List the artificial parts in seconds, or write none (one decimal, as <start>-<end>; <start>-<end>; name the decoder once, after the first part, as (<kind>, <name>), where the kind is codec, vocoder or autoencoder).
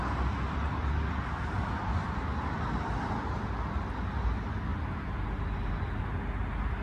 none